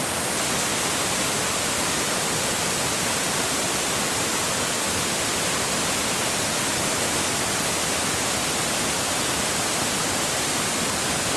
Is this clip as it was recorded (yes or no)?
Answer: yes